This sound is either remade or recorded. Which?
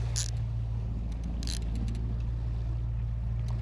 recorded